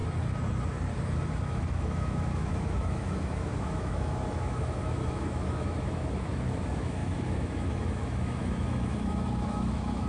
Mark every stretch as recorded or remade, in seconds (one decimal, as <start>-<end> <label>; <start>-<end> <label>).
0.0-1.4 recorded; 1.4-10.1 remade